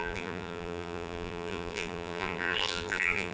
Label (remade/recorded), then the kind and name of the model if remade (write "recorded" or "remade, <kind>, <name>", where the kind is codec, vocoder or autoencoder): remade, vocoder, BigVGAN v2